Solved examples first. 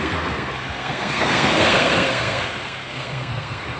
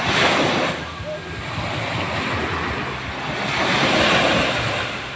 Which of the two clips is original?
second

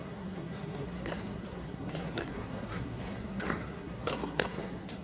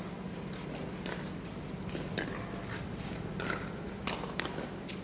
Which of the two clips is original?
second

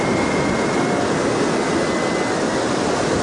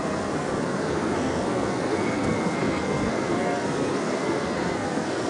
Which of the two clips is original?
first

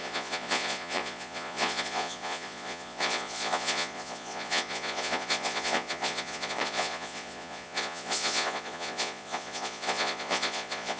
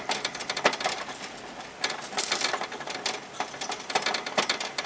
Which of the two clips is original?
second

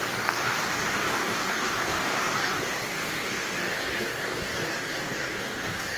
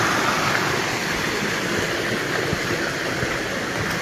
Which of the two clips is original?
second